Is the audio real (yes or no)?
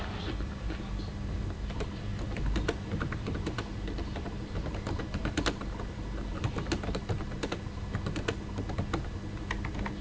yes